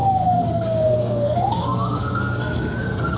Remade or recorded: remade